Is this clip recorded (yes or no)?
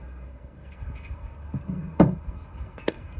no